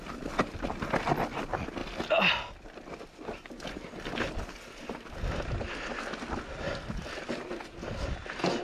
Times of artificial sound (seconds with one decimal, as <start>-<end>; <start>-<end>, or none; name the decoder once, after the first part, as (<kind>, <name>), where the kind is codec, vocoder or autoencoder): none